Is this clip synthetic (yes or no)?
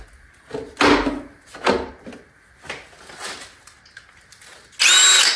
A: no